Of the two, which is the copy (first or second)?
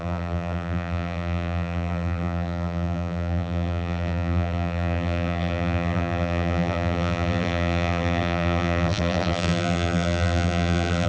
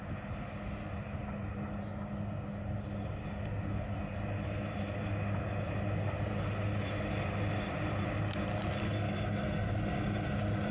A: first